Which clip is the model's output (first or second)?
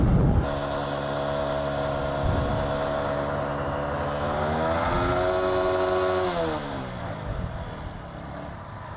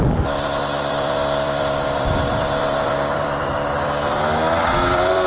second